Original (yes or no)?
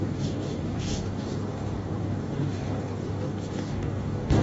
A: no